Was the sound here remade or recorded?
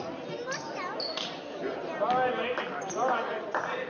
recorded